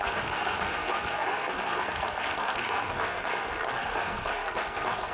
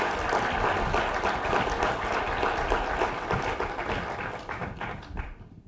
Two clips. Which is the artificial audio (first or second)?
first